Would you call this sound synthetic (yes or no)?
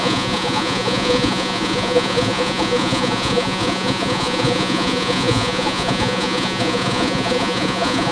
yes